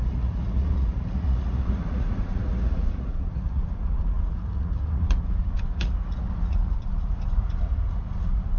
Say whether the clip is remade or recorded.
remade